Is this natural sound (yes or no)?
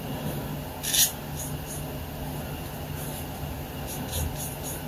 yes